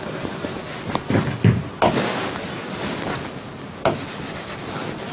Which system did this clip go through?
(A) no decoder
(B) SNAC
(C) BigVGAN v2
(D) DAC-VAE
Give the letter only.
A